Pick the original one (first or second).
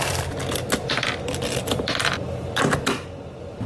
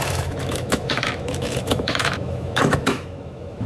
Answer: first